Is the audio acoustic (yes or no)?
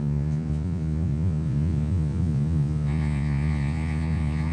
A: no